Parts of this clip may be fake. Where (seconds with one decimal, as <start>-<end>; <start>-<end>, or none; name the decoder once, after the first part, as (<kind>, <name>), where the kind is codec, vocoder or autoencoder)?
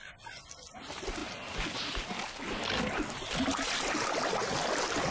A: none